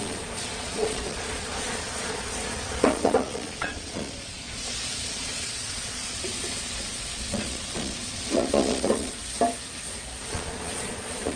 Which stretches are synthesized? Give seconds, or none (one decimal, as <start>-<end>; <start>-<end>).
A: 0.0-9.2; 10.3-11.4